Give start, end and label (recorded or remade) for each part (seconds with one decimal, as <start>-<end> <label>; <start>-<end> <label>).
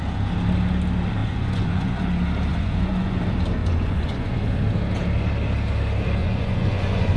0.0-1.2 recorded; 1.2-2.1 remade; 2.1-2.5 recorded; 2.5-3.2 remade; 3.2-3.6 recorded; 3.6-4.4 remade; 4.4-6.2 recorded; 6.2-7.2 remade